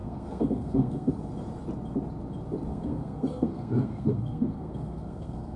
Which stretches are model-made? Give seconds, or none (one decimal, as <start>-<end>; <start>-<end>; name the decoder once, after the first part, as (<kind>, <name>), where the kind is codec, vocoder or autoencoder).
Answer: 0.0-1.1 (codec, SNAC); 2.7-5.6